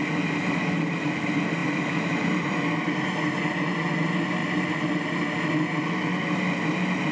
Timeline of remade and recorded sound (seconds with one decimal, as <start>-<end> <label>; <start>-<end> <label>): 0.0-1.6 recorded; 1.6-2.6 remade; 2.6-7.1 recorded